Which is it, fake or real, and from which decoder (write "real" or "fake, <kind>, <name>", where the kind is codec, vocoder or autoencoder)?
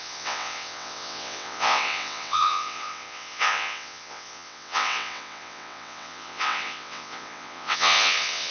fake, vocoder, WaveNeXt